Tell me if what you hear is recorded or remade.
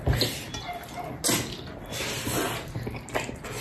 recorded